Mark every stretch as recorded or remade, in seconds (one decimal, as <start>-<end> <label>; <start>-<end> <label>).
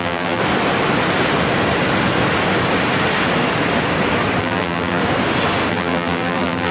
0.0-0.4 remade; 0.4-4.4 recorded; 4.4-5.0 remade; 5.0-5.7 recorded; 5.7-6.7 remade